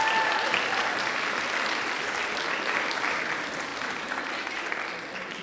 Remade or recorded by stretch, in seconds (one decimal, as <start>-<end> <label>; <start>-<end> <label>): 0.0-5.4 recorded